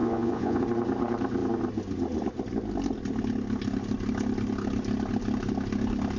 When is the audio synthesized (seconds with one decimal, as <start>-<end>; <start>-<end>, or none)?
0.0-0.6